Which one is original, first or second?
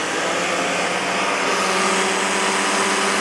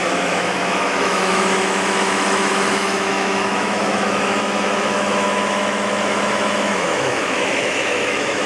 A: first